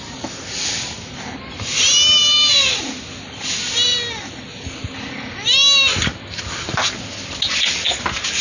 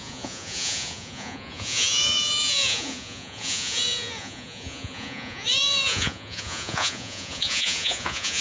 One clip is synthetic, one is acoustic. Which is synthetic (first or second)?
second